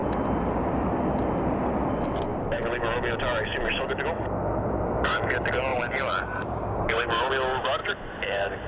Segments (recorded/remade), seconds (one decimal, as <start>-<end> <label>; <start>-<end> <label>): 0.0-5.7 recorded; 5.7-7.3 remade; 7.3-7.8 recorded; 7.8-8.7 remade